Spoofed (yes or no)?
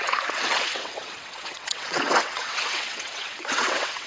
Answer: yes